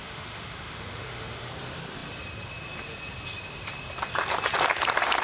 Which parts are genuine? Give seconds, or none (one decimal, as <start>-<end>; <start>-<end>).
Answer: 1.5-5.2